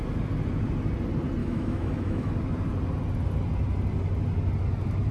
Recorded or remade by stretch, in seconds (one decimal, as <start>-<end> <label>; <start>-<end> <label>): 0.0-1.4 recorded; 1.4-2.3 remade; 2.3-5.1 recorded